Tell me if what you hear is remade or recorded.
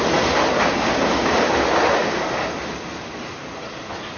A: recorded